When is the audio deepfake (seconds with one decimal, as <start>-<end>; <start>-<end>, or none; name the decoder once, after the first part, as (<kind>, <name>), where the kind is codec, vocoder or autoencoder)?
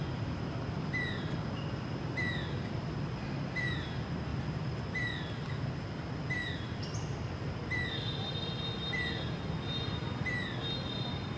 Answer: none